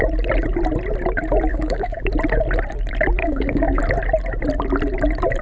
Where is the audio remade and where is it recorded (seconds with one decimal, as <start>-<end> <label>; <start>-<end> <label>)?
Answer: 0.0-1.5 recorded; 1.5-2.0 remade; 2.0-3.2 recorded; 3.2-3.8 remade; 3.8-5.4 recorded